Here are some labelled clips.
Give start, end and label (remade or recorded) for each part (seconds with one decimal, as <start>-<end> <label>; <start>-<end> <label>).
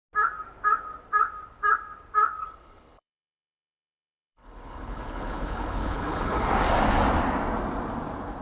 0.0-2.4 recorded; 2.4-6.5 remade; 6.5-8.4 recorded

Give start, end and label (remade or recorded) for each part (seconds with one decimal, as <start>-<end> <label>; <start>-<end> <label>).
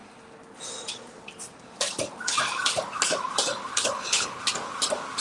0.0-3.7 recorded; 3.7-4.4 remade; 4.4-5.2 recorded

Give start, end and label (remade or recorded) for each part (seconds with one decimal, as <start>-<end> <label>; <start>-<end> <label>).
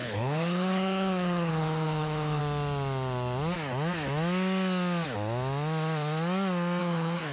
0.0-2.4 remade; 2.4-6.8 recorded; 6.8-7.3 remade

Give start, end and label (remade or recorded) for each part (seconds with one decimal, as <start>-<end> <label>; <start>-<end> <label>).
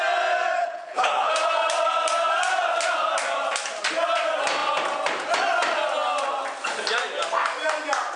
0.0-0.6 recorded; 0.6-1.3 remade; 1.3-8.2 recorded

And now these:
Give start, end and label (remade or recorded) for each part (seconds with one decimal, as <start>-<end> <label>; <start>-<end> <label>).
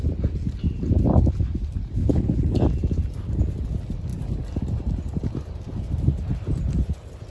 0.0-2.0 recorded; 2.0-2.6 remade; 2.6-7.3 recorded